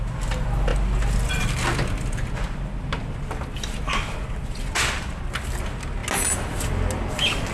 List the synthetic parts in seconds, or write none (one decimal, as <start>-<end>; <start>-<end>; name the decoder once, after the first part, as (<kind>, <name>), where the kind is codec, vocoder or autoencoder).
none